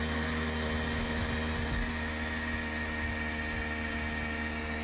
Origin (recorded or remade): recorded